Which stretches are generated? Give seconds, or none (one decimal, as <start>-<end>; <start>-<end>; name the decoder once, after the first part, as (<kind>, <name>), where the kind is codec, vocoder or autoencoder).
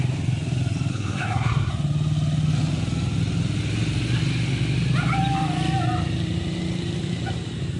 0.9-1.7 (codec, SNAC)